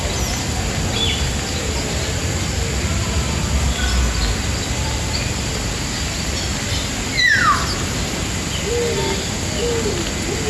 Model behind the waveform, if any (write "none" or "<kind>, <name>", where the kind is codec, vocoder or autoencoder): none